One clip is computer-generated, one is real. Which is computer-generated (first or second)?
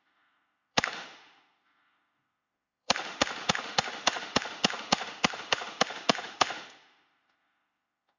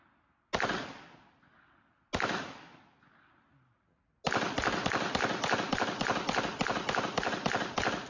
first